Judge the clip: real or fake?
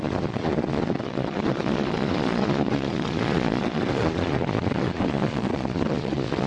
fake